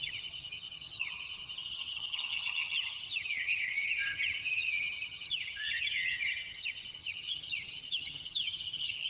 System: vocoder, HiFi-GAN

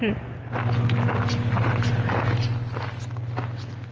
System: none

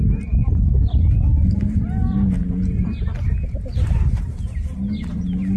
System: none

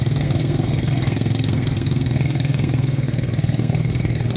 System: codec, SNAC